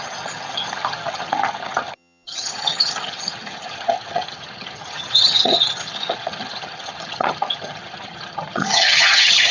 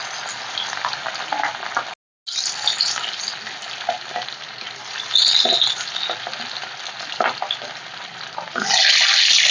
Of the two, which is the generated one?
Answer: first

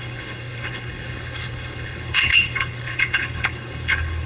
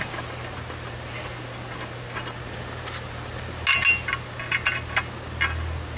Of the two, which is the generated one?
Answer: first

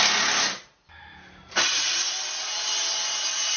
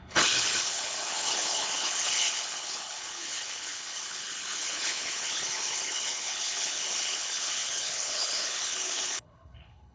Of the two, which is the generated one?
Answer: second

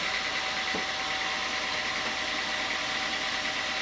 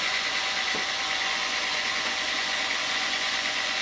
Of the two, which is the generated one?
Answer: second